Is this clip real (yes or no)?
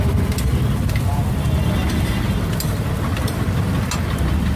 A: yes